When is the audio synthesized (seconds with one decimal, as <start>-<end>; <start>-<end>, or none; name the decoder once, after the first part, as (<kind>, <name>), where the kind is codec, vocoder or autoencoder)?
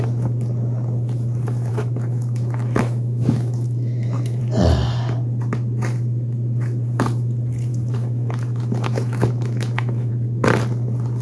1.7-4.4 (autoencoder, DAC-VAE); 7.7-10.1